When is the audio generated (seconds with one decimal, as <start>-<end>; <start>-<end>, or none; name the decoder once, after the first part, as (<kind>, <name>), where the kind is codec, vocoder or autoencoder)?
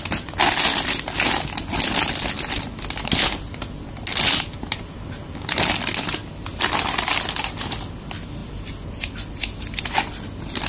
none